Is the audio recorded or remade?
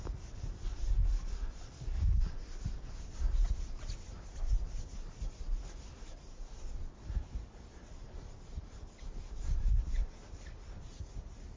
recorded